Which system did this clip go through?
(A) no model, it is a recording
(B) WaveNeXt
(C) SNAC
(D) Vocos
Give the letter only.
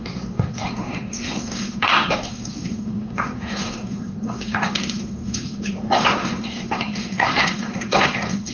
C